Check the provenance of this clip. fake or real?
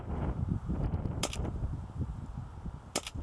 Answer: real